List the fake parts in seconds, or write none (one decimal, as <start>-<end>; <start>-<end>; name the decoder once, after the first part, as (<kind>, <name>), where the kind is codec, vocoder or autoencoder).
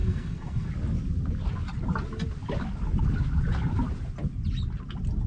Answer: 0.0-0.7 (codec, SNAC)